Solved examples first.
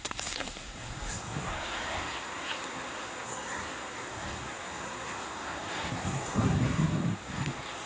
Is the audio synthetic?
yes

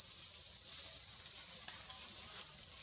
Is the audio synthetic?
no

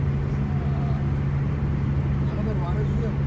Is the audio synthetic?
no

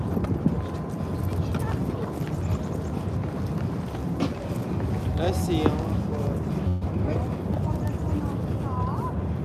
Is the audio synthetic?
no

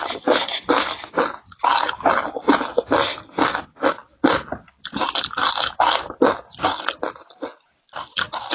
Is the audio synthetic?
no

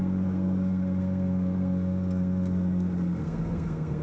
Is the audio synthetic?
yes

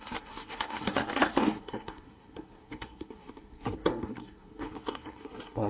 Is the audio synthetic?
yes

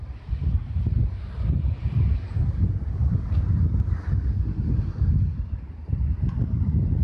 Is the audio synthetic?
no